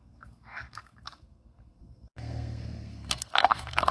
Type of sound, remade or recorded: remade